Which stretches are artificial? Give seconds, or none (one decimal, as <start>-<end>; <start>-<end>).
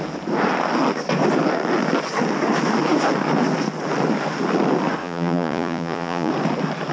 5.0-6.3